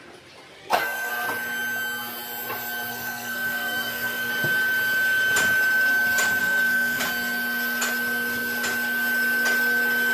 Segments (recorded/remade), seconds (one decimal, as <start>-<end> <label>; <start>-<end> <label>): 0.0-0.6 recorded; 0.6-1.1 remade; 1.1-2.9 recorded; 2.9-4.3 remade; 4.3-6.4 recorded; 6.4-7.0 remade; 7.0-10.1 recorded

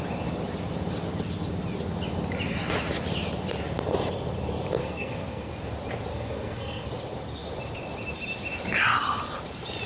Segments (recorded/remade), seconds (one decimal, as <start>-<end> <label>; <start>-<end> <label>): 0.0-4.8 recorded; 4.8-5.5 remade; 5.5-6.1 recorded; 6.1-6.9 remade; 6.9-9.9 recorded